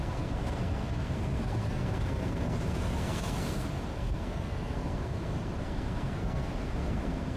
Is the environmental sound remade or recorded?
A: remade